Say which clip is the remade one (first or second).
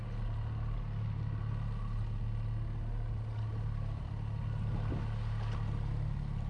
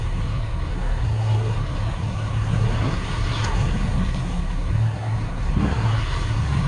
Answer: second